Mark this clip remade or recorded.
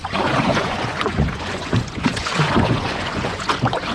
remade